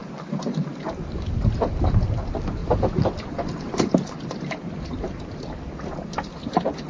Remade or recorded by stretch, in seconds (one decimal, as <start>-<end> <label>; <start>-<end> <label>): 0.0-2.6 recorded; 2.6-5.2 remade; 5.2-6.9 recorded